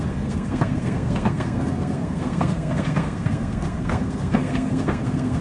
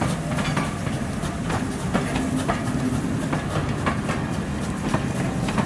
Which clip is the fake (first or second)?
first